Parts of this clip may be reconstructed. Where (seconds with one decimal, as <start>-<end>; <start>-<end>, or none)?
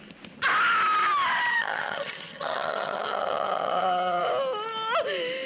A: 1.5-4.2